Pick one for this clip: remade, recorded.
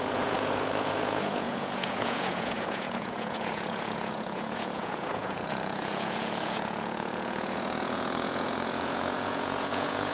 remade